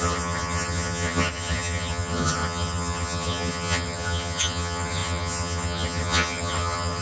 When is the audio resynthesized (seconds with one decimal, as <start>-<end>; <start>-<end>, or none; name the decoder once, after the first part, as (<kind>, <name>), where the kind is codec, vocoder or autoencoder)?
0.0-7.0 (vocoder, HiFi-GAN)